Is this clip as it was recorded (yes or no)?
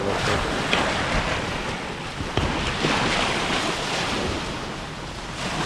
yes